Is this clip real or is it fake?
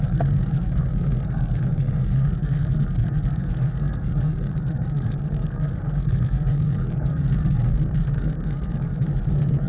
fake